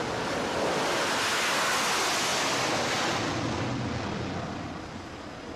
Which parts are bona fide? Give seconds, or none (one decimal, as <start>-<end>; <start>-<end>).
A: 0.0-5.6